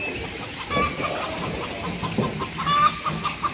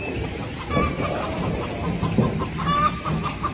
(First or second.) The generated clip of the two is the second